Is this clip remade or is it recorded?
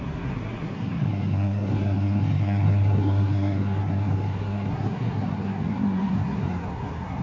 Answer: remade